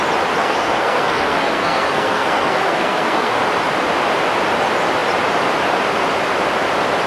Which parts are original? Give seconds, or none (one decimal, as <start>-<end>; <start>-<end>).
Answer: 0.0-0.4; 3.4-7.1